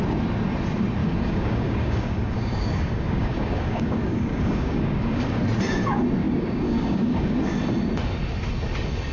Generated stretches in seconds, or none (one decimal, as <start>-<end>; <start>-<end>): 1.0-5.4; 6.2-7.4